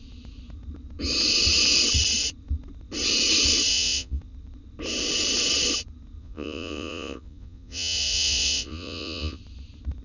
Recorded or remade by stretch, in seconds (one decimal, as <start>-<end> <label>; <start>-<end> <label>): 0.0-3.7 recorded; 3.7-4.2 remade; 4.2-6.2 recorded; 6.2-9.4 remade; 9.4-10.0 recorded